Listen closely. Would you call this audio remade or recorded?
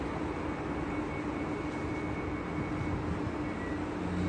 recorded